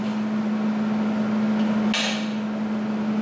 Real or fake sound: real